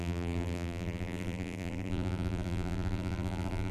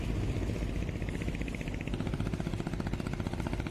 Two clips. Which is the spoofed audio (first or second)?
first